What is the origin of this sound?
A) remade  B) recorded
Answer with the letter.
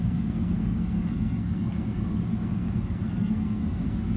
A